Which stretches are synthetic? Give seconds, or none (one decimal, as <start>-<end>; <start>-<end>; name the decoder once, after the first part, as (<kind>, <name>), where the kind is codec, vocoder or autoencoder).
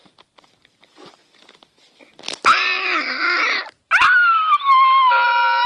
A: none